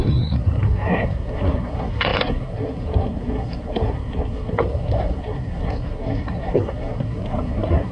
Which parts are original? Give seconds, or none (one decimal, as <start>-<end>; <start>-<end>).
none